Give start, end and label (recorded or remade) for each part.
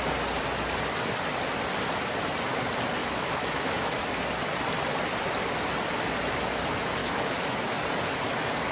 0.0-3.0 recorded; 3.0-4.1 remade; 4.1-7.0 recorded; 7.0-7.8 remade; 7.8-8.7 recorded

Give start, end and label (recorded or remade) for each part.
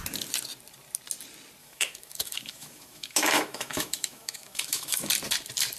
0.0-1.6 recorded; 1.6-5.1 remade; 5.1-5.8 recorded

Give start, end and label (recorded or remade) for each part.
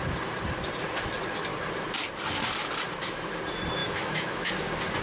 0.0-2.9 recorded; 2.9-3.4 remade; 3.4-3.8 recorded; 3.8-4.5 remade; 4.5-5.0 recorded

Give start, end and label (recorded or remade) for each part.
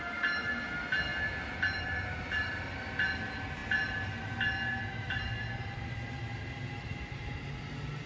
0.0-8.1 recorded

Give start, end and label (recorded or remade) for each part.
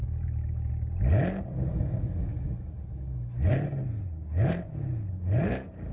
0.0-0.7 remade; 0.7-1.7 recorded; 1.7-3.5 remade; 3.5-5.9 recorded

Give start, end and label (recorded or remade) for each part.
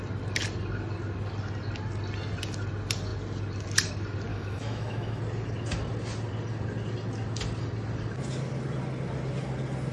0.0-4.3 recorded; 4.3-5.2 remade; 5.2-9.9 recorded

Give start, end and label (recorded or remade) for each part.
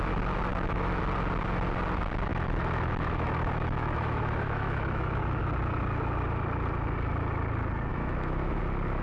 0.0-0.5 recorded; 0.5-1.0 remade; 1.0-2.3 recorded; 2.3-5.4 remade; 5.4-7.9 recorded; 7.9-8.6 remade; 8.6-9.0 recorded